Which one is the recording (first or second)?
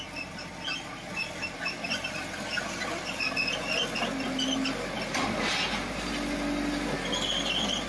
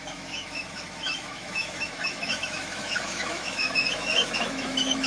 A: first